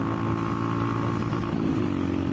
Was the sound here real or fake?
real